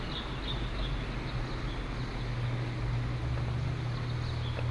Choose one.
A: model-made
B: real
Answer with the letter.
B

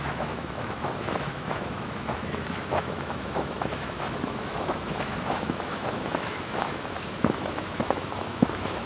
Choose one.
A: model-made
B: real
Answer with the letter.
A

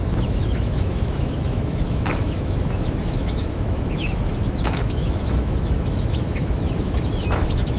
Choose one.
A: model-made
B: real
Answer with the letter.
A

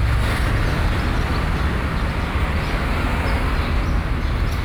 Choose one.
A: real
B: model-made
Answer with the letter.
A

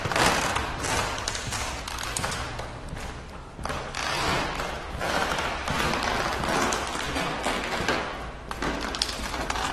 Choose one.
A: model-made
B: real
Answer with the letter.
B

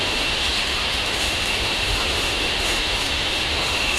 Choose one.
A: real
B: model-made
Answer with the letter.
B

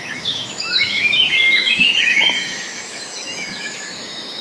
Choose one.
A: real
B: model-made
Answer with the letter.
B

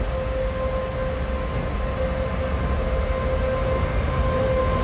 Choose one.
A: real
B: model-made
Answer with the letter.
A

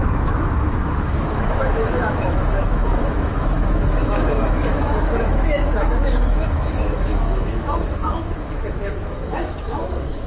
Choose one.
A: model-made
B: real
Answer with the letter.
A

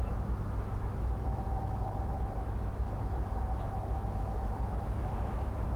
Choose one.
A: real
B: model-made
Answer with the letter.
B